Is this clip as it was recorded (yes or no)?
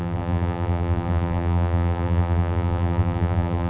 no